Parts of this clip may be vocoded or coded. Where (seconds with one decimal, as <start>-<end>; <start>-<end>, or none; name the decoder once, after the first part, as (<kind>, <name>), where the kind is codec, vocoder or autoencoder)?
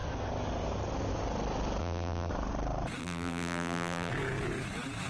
1.8-2.3 (vocoder, BigVGAN v2); 3.0-4.1